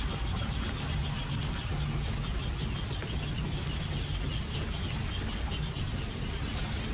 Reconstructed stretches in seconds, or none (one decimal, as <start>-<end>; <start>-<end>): none